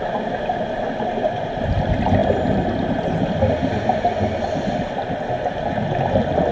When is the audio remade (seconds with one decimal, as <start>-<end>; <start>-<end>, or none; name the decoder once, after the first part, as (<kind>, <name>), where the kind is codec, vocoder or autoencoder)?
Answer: none